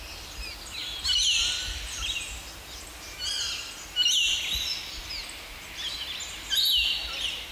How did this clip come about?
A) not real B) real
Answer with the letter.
B